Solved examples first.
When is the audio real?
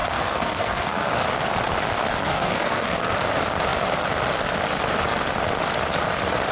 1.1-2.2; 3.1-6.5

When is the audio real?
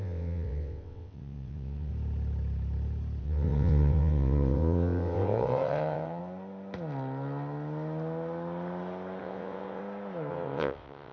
1.9-3.2; 6.2-9.2; 9.8-10.3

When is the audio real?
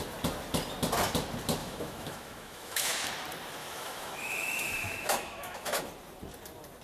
0.0-1.6; 3.1-3.6; 5.9-6.8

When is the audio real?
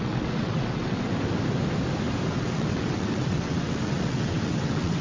1.1-2.3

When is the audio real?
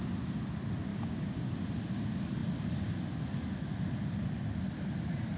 0.0-0.9; 1.5-5.4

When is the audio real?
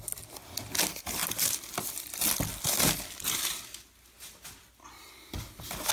0.0-5.9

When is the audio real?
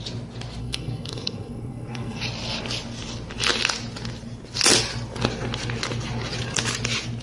0.0-0.6; 2.2-7.2